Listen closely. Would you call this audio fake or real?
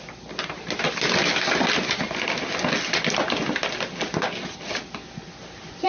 real